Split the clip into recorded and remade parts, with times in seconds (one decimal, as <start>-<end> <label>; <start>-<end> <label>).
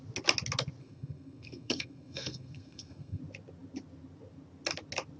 0.0-0.8 recorded; 0.8-3.2 remade; 3.2-5.2 recorded